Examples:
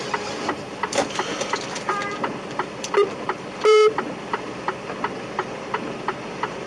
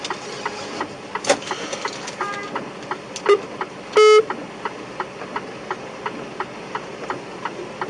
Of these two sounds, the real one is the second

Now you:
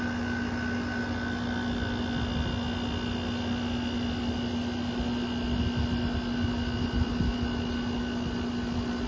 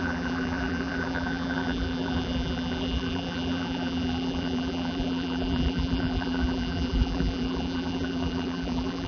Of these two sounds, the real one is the first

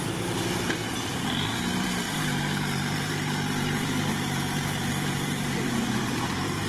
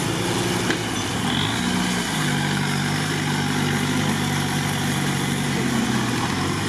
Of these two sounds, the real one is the second